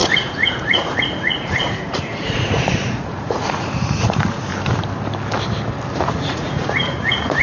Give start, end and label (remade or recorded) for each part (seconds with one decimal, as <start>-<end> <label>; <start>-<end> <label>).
0.0-4.5 remade; 4.5-6.1 recorded; 6.1-7.4 remade